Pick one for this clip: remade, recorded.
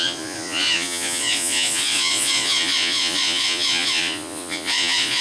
remade